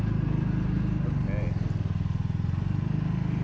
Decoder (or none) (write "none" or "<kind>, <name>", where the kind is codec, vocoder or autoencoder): none